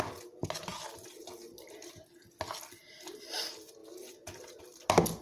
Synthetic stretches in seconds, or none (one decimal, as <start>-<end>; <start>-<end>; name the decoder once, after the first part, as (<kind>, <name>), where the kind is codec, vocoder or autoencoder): none